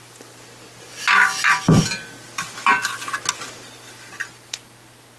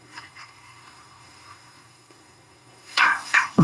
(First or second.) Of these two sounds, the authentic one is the first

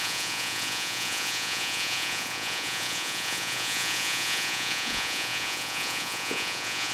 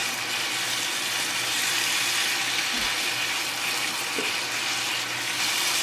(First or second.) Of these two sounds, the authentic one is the second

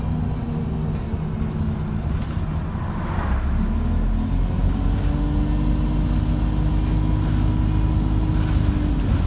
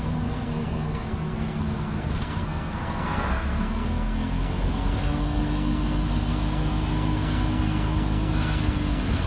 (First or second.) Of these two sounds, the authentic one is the first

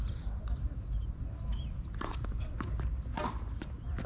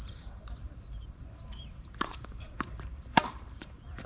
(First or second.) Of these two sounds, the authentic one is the first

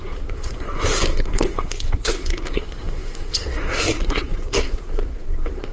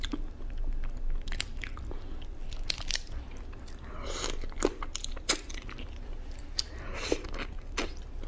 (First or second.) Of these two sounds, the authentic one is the second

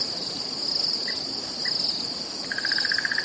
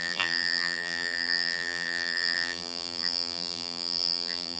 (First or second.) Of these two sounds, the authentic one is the first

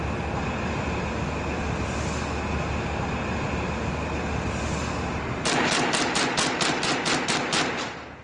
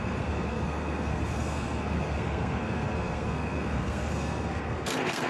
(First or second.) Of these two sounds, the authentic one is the first